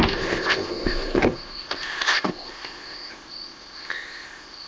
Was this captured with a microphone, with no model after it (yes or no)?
no